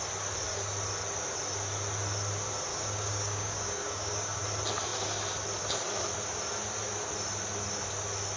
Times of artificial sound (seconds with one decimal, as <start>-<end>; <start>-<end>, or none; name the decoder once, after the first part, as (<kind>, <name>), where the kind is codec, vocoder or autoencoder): 2.7-4.4 (codec, DAC)